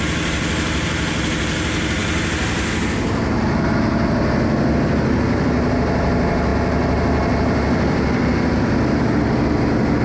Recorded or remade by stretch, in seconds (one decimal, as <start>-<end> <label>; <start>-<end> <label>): 0.0-10.0 recorded